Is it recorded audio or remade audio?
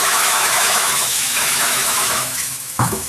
remade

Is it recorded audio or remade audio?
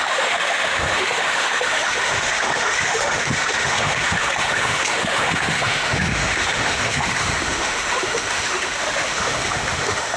remade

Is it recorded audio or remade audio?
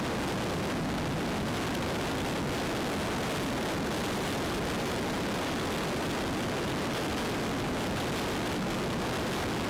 recorded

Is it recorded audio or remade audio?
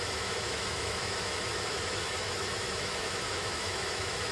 remade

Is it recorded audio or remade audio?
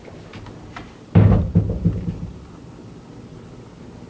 recorded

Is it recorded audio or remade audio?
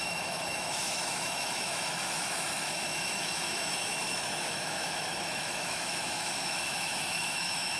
remade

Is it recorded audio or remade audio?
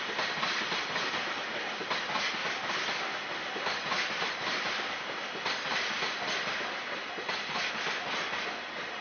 recorded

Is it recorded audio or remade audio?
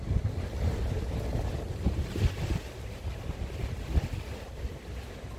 recorded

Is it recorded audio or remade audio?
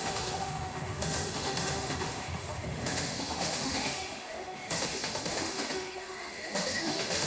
remade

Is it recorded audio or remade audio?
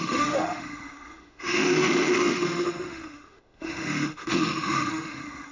remade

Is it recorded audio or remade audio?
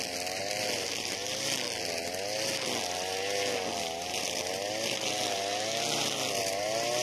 recorded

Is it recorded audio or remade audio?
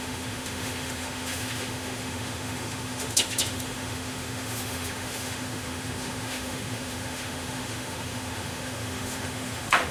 remade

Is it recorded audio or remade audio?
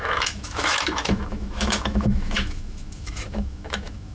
remade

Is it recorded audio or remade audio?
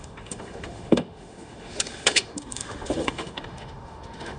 remade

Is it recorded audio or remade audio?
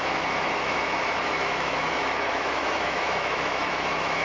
remade